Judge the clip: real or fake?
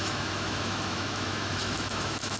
fake